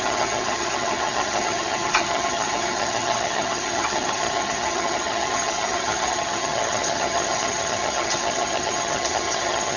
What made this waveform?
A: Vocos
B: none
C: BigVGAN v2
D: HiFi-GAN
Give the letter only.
D